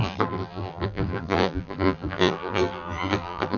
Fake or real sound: fake